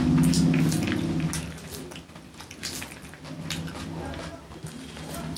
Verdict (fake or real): real